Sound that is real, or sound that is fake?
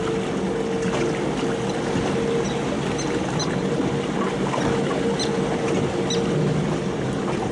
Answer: real